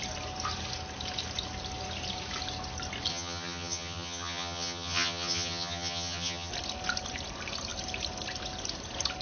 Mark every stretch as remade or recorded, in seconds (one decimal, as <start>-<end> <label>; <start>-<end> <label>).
0.0-3.1 recorded; 3.1-6.5 remade; 6.5-9.2 recorded